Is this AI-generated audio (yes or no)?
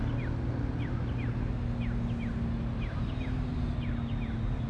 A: no